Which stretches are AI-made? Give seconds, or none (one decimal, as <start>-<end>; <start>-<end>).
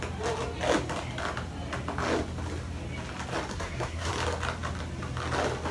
3.5-4.1